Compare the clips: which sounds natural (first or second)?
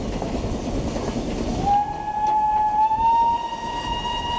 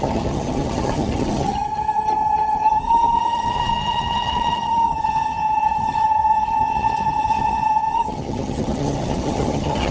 first